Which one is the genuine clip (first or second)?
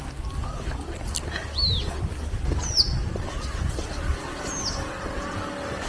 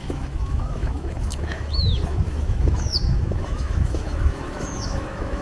first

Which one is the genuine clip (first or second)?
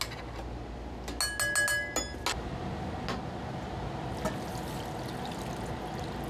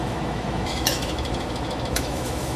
first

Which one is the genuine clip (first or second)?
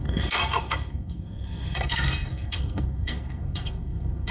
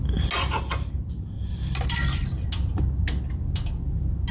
second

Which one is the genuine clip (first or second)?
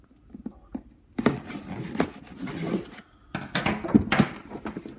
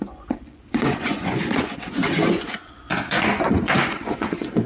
first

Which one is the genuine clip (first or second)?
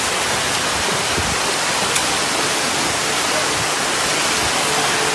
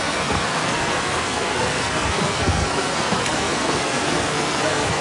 first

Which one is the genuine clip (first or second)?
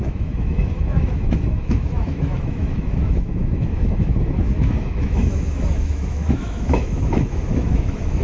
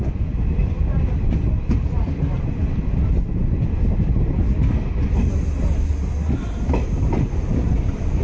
second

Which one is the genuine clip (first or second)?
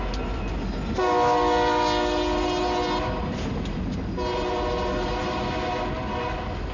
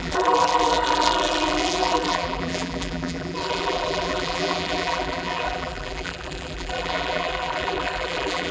first